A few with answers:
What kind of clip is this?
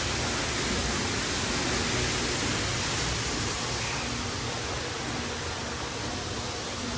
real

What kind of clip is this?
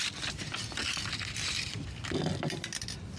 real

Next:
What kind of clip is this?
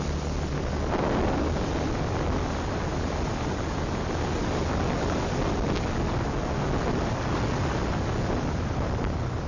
real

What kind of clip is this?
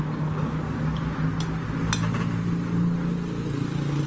real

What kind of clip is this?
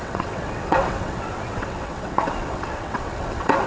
fake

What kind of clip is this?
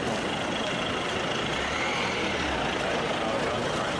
real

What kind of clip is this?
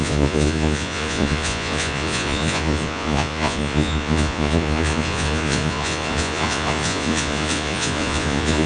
fake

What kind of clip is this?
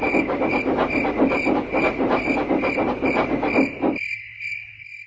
real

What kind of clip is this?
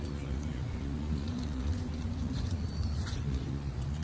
fake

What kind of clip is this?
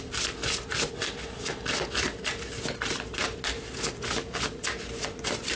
real